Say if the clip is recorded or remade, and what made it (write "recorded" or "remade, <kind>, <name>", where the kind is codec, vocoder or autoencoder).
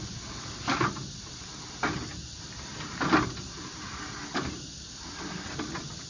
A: recorded